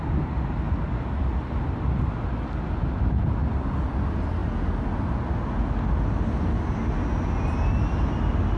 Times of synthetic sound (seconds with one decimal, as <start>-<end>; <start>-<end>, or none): none